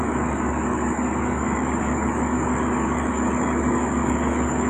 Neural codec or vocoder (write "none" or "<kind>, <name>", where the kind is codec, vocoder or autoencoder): codec, DAC